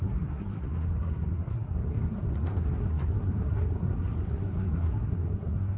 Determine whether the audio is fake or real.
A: fake